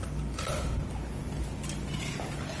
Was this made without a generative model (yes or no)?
yes